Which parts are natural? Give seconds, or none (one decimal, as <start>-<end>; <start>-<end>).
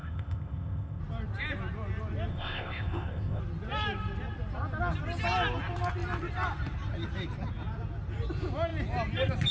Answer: 1.0-2.3; 3.4-9.5